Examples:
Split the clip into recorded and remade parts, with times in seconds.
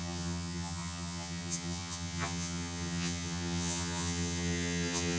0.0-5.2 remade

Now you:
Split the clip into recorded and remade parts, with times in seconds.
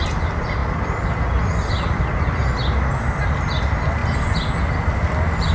0.0-5.5 recorded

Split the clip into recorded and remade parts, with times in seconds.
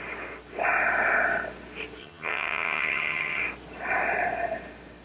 0.0-2.0 recorded; 2.0-3.4 remade; 3.4-5.0 recorded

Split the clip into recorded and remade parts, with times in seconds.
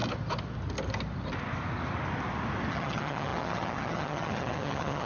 0.0-2.7 recorded; 2.7-5.1 remade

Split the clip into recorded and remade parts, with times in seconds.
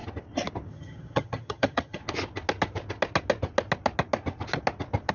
0.0-0.7 recorded; 0.7-2.0 remade; 2.0-5.1 recorded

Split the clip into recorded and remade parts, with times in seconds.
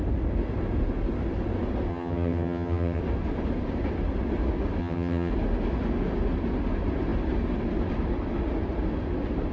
0.0-1.9 recorded; 1.9-3.0 remade; 3.0-4.8 recorded; 4.8-5.3 remade; 5.3-9.5 recorded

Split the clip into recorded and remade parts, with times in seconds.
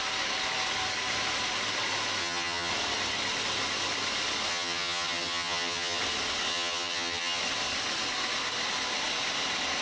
0.0-2.2 recorded; 2.2-2.7 remade; 2.7-4.5 recorded; 4.5-6.0 remade; 6.0-6.5 recorded; 6.5-7.4 remade; 7.4-9.8 recorded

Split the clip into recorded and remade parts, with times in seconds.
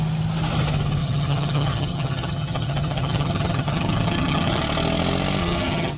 0.0-1.0 recorded; 1.0-4.6 remade; 4.6-5.4 recorded; 5.4-6.0 remade